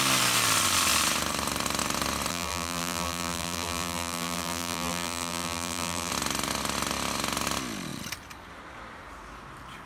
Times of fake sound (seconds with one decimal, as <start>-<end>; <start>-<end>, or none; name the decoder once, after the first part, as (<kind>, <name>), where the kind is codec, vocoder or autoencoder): 2.3-6.1 (vocoder, BigVGAN v2)